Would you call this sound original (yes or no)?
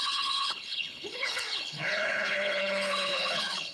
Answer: no